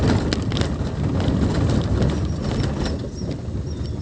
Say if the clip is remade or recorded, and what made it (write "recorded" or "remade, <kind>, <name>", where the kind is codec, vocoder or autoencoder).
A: recorded